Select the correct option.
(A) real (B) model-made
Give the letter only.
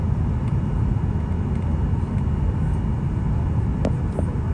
A